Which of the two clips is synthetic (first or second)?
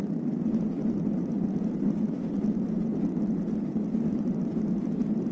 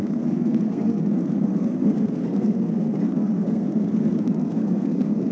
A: second